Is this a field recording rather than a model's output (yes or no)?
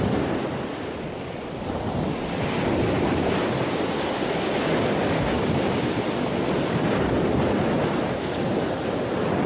yes